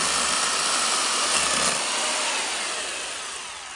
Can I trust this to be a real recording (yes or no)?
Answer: yes